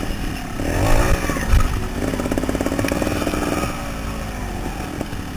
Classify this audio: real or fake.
real